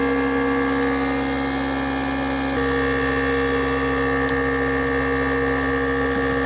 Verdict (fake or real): real